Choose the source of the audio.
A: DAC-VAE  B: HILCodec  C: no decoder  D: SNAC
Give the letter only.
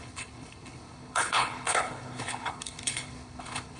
B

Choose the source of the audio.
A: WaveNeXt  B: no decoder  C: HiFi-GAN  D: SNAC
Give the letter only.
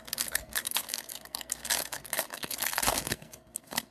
D